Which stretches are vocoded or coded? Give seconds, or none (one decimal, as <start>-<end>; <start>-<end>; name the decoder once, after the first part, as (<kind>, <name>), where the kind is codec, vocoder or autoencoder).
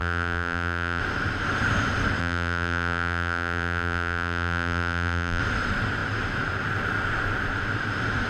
0.0-1.0 (vocoder, BigVGAN v2); 2.2-5.4